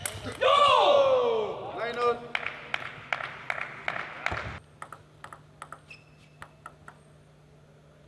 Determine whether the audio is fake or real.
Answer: real